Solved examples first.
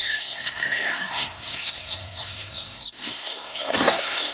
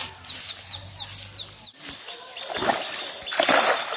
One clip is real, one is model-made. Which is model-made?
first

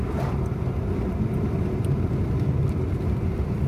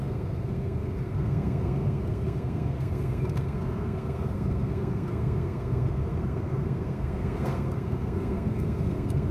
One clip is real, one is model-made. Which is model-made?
second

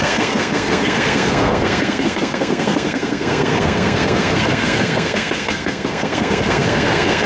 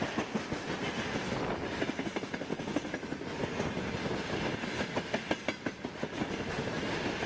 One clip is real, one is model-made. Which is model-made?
first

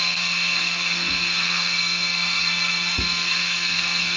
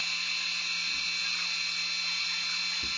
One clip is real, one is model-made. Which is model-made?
first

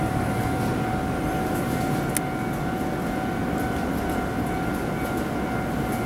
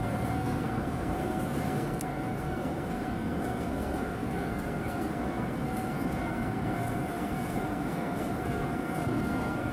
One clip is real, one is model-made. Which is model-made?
second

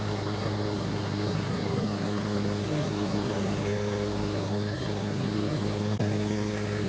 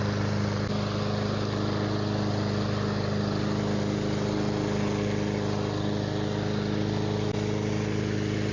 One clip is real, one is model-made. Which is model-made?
first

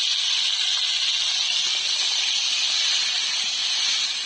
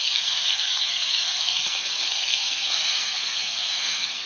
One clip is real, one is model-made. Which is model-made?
second